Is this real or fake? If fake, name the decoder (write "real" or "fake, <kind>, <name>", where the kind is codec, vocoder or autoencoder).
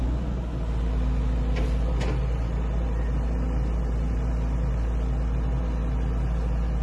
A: real